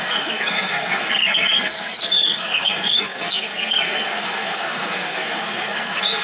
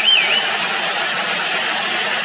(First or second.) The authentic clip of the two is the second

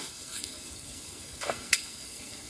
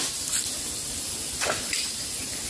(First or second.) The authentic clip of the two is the second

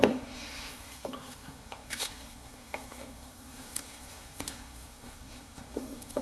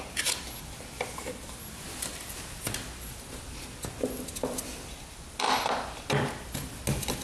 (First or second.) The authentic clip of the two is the second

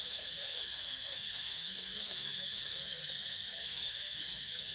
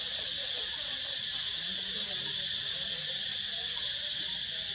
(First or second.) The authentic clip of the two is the second